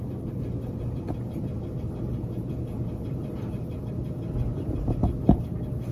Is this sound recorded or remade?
remade